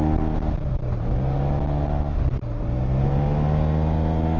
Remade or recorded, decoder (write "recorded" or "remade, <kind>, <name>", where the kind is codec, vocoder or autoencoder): recorded